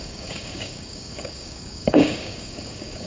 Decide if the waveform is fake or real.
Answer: fake